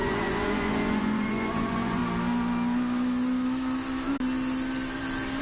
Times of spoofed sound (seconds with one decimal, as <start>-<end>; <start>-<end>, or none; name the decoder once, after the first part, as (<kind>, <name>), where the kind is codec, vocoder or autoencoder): 0.0-2.0 (vocoder, Vocos)